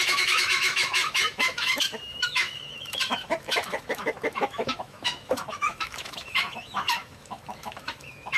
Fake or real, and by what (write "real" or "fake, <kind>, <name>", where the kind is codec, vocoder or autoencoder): fake, autoencoder, DAC-VAE